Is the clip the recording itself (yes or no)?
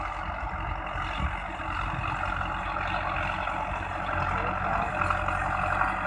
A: yes